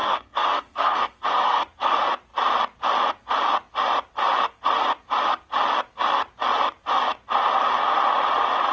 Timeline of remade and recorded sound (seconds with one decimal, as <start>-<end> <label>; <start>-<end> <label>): 0.0-1.6 remade; 1.6-8.7 recorded

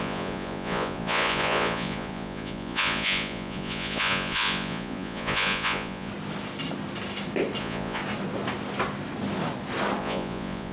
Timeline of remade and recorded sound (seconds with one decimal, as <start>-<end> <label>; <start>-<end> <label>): 0.0-6.1 remade; 6.1-7.6 recorded; 7.6-8.0 remade; 8.0-10.0 recorded; 10.0-10.7 remade

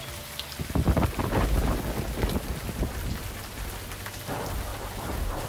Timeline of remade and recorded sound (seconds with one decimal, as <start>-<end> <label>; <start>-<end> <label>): 0.0-4.7 recorded; 4.7-5.5 remade

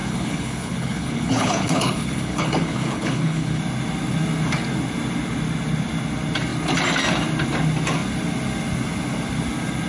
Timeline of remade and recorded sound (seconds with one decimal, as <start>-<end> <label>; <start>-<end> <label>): 0.0-3.6 remade; 3.6-9.9 recorded

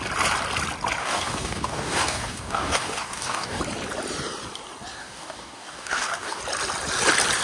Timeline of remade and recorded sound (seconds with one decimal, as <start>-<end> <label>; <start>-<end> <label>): 0.0-1.0 recorded; 1.0-3.6 remade; 3.6-5.0 recorded; 5.0-6.4 remade; 6.4-7.4 recorded

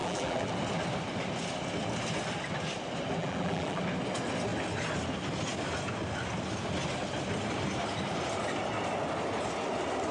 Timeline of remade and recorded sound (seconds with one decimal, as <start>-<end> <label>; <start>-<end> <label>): 0.0-0.5 remade; 0.5-3.2 recorded; 3.2-3.8 remade; 3.8-10.1 recorded

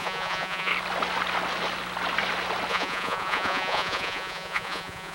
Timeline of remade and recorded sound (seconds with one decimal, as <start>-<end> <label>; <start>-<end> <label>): 0.0-0.7 remade; 0.7-2.7 recorded; 2.7-5.1 remade

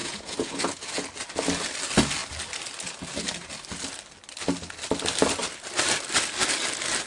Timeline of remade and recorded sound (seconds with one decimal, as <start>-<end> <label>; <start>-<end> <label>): 0.0-1.1 remade; 1.1-7.1 recorded